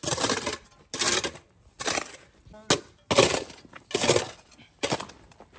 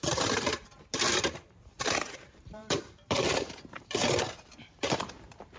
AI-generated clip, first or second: second